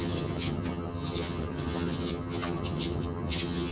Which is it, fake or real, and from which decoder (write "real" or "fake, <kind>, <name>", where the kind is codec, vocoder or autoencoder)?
fake, vocoder, HiFi-GAN